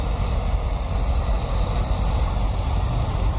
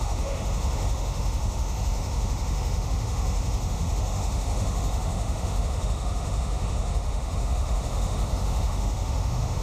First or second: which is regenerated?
second